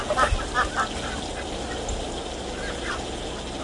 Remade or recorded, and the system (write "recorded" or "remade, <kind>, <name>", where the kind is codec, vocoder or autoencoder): recorded